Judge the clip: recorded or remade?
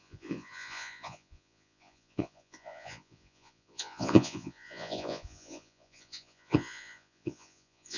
remade